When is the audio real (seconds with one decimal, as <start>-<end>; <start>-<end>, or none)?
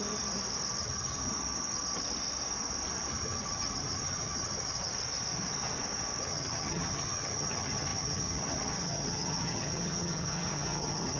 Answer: 0.0-0.8; 1.3-3.1; 4.9-6.2